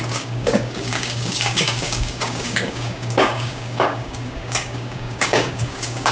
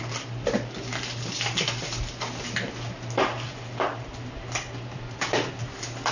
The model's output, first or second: first